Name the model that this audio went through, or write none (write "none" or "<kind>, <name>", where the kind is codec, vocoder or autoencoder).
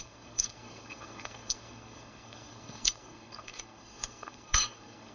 codec, SNAC